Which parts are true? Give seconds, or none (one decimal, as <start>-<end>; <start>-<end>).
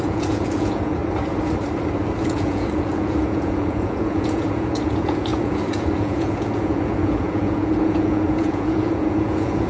1.0-2.2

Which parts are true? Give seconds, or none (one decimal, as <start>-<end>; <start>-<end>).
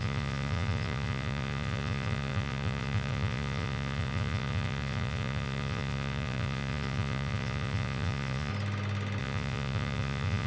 8.5-9.2